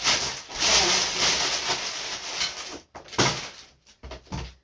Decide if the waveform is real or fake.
real